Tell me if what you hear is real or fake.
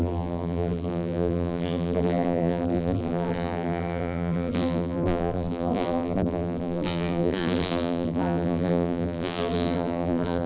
fake